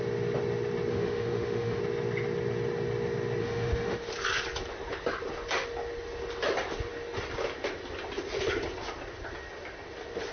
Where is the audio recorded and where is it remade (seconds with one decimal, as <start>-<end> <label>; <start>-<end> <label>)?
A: 0.0-0.9 recorded; 0.9-1.8 remade; 1.8-3.4 recorded; 3.4-4.1 remade; 4.1-10.3 recorded